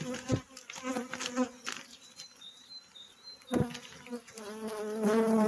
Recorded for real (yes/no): yes